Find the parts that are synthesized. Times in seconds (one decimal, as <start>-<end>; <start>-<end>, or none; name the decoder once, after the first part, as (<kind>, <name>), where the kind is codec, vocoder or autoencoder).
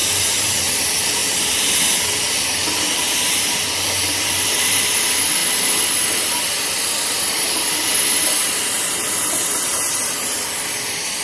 0.6-1.2 (vocoder, BigVGAN v2); 4.0-11.2